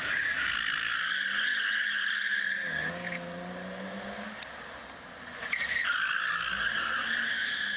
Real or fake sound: real